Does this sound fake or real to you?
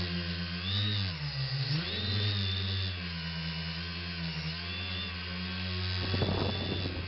real